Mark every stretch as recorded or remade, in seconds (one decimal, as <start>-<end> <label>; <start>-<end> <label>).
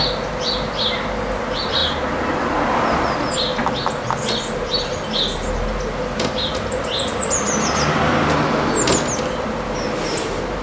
0.0-10.6 recorded